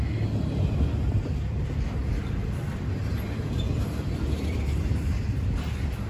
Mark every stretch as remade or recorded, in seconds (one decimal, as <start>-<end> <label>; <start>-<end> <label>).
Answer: 0.0-6.1 recorded